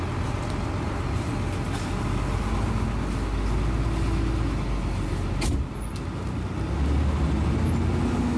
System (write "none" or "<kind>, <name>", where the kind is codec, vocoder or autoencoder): none